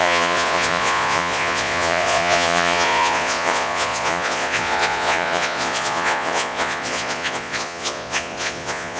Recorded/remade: remade